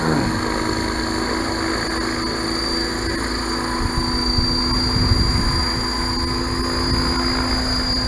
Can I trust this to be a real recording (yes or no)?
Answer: yes